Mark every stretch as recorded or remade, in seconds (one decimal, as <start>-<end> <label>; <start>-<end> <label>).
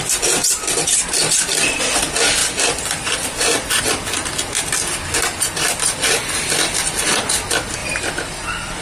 0.0-0.4 recorded; 0.4-1.7 remade; 1.7-2.4 recorded; 2.4-3.8 remade; 3.8-7.8 recorded; 7.8-8.8 remade